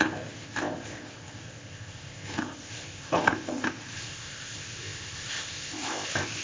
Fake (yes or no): yes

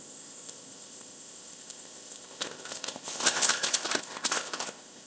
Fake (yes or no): yes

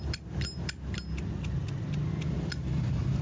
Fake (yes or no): no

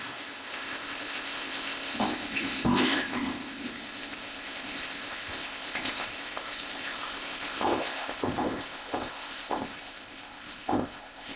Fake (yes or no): yes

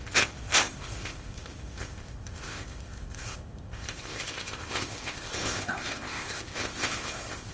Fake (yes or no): yes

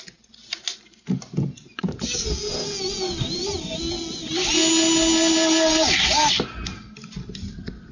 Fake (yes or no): no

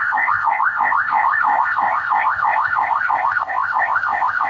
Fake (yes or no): yes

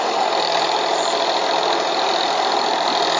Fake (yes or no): no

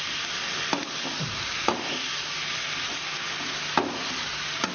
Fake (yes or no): no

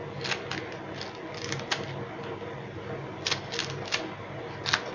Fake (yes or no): no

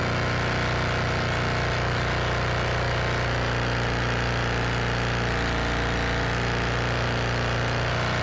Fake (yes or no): no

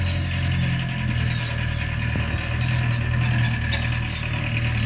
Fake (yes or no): no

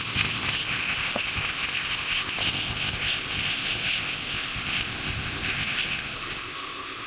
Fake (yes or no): yes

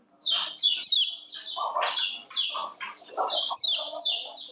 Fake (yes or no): no